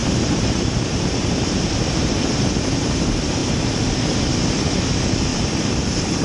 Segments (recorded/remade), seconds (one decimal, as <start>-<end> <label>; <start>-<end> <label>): 0.0-2.4 remade; 2.4-5.3 recorded; 5.3-6.2 remade